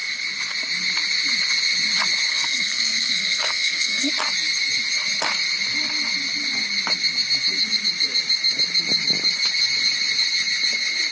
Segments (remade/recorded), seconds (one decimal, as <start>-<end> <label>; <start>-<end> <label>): 0.0-2.3 recorded; 2.3-4.1 remade; 4.1-11.1 recorded